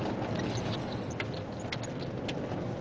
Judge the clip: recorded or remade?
recorded